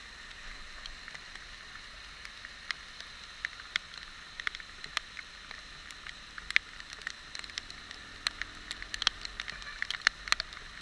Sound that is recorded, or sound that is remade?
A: recorded